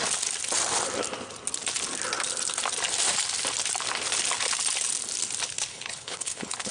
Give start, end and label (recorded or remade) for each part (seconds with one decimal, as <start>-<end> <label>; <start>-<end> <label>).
0.0-5.7 recorded; 5.7-6.7 remade

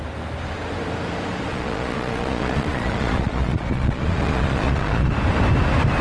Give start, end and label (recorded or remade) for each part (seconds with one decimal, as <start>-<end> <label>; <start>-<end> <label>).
0.0-1.5 recorded; 1.5-5.1 remade; 5.1-6.0 recorded